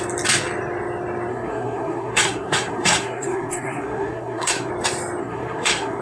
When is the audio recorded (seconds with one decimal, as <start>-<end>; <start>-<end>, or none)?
0.0-1.3; 4.7-5.2